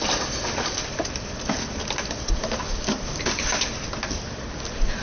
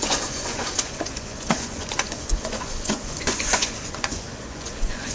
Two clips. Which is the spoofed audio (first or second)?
second